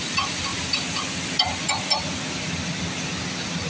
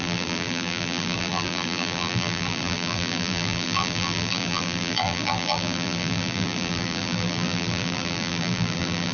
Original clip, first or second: first